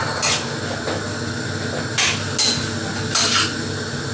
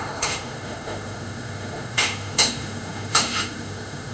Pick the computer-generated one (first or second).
second